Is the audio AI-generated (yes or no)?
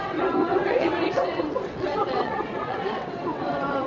yes